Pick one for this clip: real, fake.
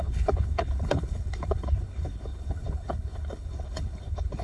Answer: fake